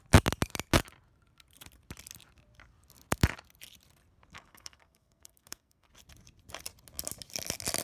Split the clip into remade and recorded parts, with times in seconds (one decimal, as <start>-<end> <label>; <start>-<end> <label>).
0.0-4.3 recorded; 4.3-5.9 remade; 5.9-7.8 recorded